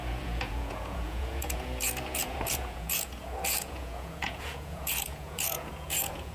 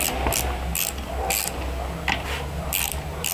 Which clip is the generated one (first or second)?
first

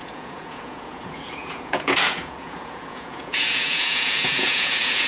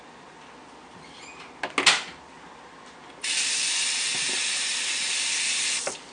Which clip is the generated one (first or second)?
first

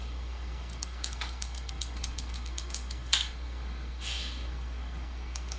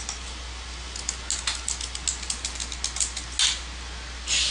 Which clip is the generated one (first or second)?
first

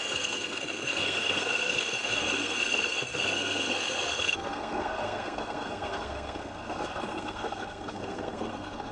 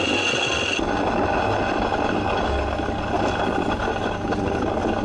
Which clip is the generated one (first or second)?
first